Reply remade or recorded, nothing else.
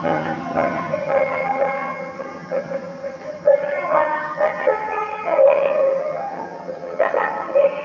remade